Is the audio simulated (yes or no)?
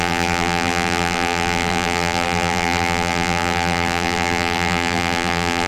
yes